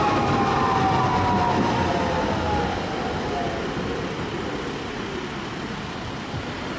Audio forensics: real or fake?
real